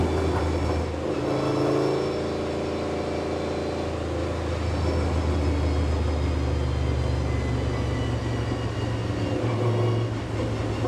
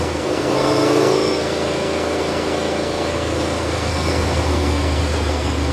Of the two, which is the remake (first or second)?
second